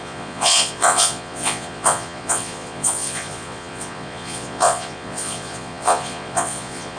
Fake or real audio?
fake